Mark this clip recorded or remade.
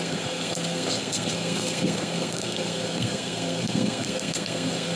remade